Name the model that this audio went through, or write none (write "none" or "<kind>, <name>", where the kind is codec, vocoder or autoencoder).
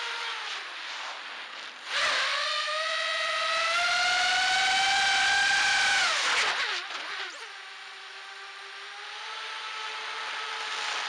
none